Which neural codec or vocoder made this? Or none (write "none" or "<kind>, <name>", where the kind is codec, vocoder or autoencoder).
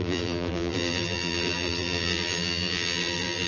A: vocoder, BigVGAN v2